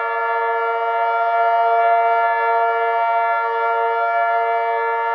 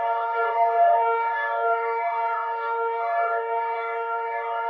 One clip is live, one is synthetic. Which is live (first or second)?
first